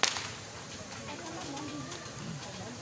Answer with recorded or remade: recorded